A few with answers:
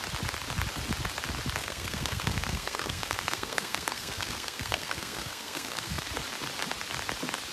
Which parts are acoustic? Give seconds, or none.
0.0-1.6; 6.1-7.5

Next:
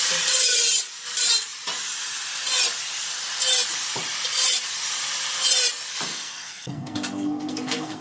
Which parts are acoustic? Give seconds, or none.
0.0-6.1

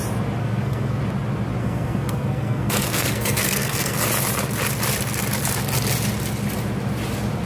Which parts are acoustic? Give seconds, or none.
0.0-0.4; 1.0-1.6; 4.0-7.5

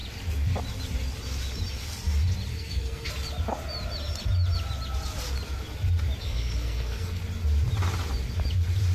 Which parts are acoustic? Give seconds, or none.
0.0-2.5; 3.1-6.2; 7.2-8.9

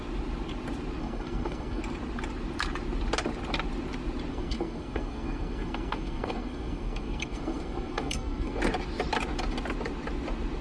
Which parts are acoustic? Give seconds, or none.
0.0-1.0; 1.8-4.3; 8.6-10.6